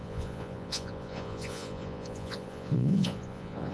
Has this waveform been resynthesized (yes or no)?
yes